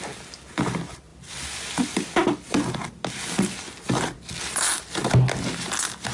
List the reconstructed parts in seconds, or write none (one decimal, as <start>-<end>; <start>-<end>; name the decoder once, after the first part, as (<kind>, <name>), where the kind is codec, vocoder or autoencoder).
none

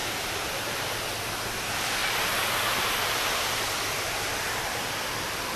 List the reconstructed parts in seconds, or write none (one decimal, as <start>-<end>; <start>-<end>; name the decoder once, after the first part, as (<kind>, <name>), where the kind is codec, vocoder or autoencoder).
0.0-0.9 (vocoder, BigVGAN v2); 2.0-5.6

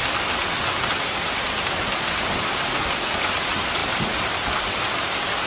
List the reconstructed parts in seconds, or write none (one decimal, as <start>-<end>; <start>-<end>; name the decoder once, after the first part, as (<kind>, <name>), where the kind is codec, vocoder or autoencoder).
3.8-4.6 (vocoder, BigVGAN v2)